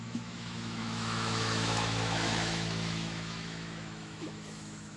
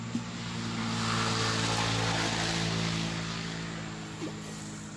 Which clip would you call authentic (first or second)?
second